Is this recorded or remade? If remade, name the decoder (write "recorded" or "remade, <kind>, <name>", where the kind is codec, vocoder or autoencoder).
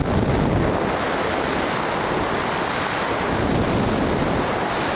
recorded